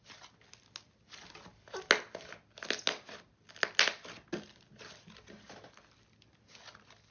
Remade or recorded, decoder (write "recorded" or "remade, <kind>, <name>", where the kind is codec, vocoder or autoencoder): recorded